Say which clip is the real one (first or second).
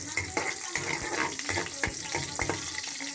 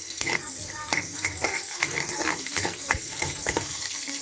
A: first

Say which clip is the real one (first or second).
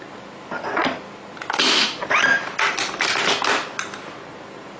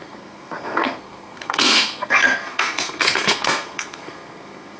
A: first